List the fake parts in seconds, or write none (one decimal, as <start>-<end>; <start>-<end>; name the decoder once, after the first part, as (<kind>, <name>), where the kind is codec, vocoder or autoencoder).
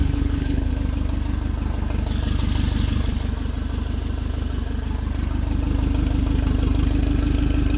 0.0-0.7 (codec, HILCodec)